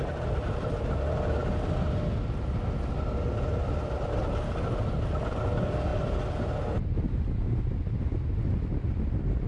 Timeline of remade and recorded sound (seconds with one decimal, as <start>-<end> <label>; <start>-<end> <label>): 0.0-9.5 recorded